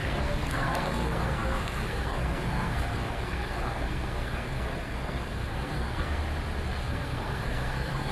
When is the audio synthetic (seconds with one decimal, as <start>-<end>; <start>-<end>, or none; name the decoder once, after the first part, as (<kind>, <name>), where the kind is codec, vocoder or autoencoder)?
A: 0.0-6.2 (codec, SNAC); 6.7-8.1